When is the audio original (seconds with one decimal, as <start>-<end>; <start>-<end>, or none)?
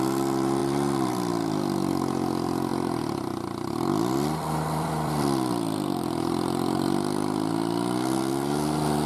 0.0-0.6; 1.3-2.7; 7.5-9.1